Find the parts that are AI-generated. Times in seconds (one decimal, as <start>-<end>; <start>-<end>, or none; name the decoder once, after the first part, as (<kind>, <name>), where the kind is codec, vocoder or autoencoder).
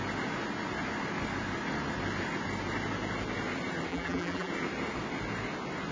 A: 3.9-4.5 (vocoder, BigVGAN v2)